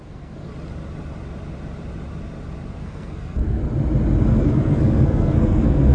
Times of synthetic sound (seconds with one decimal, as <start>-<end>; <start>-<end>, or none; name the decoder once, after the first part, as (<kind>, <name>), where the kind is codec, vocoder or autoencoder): 0.0-0.5 (codec, SNAC); 2.8-3.6; 4.3-5.9